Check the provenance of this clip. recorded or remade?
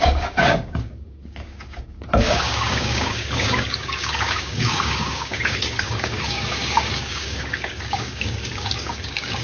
remade